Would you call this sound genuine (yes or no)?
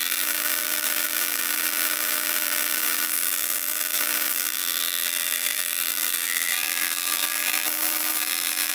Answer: no